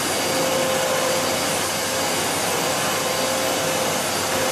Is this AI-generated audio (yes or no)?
no